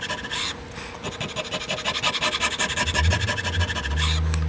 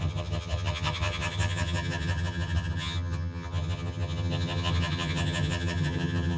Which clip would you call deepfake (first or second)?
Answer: second